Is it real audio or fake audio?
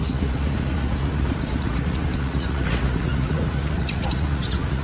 fake